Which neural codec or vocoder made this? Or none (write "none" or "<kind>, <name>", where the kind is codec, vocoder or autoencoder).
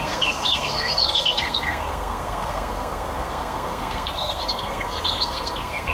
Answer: codec, SNAC